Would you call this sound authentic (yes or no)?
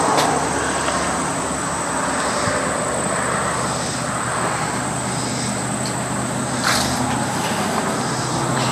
yes